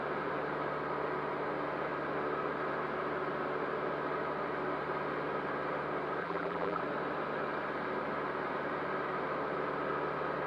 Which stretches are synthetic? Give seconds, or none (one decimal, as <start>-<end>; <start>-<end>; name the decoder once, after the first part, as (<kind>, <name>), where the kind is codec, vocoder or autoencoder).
6.2-6.8 (vocoder, BigVGAN v2)